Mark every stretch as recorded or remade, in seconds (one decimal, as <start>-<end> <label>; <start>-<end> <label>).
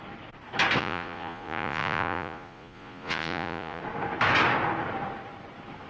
0.0-0.8 recorded; 0.8-3.8 remade; 3.8-5.9 recorded